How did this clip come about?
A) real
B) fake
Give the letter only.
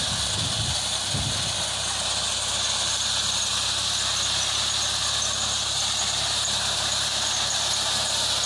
A